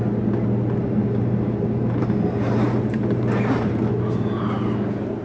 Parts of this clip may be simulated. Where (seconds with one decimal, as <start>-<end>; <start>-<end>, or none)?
0.8-3.9